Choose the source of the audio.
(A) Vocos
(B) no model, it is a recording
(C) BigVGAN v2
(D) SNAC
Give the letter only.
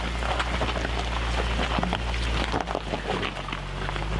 B